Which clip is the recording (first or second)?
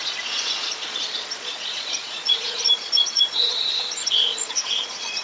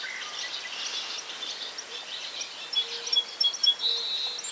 second